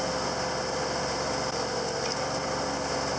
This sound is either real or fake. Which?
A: real